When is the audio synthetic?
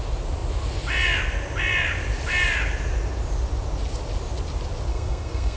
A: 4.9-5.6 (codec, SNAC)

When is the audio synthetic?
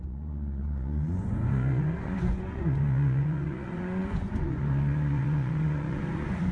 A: 0.0-6.5 (vocoder, Vocos)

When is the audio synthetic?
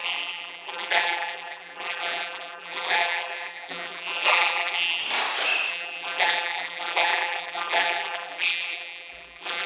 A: 0.0-5.0 (vocoder, BigVGAN v2); 5.7-9.7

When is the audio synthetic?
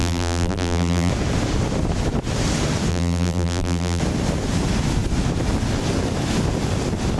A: 0.0-1.1 (vocoder, BigVGAN v2); 2.9-4.0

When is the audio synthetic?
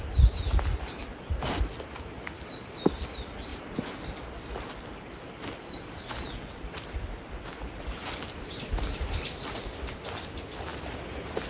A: none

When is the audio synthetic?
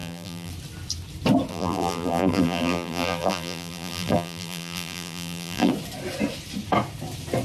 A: 0.0-0.5 (vocoder, BigVGAN v2); 1.5-5.7